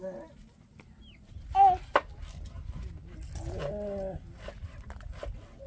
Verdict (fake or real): real